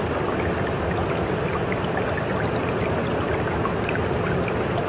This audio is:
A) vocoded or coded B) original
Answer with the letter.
B